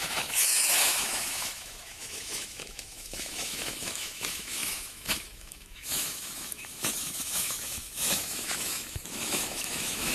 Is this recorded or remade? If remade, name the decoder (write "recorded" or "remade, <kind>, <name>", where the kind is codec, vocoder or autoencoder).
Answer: remade, autoencoder, DAC-VAE